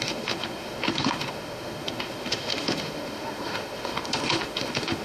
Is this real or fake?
fake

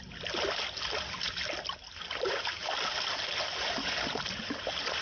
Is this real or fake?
real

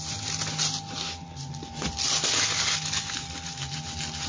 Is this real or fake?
real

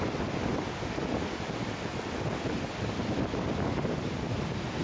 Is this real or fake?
real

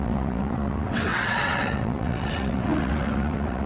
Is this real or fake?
fake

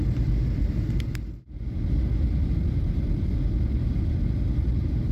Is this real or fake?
real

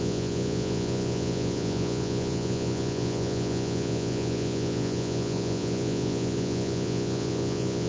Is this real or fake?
fake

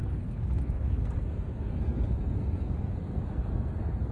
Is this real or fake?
fake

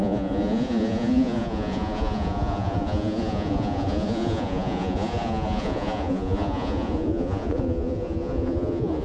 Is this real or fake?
fake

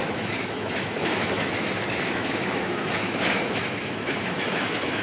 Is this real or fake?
fake